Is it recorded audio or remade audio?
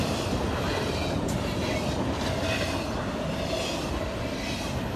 recorded